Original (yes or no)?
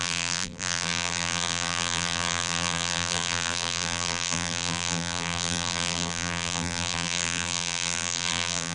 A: no